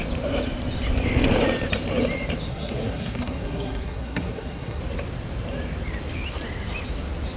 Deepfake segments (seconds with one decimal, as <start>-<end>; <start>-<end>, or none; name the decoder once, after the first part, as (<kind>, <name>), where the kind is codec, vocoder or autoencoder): 2.5-4.8 (codec, SNAC)